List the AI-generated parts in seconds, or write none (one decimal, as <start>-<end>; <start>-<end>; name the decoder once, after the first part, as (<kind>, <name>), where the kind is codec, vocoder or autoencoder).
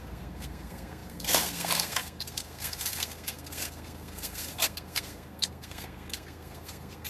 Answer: 0.0-7.1 (codec, SNAC)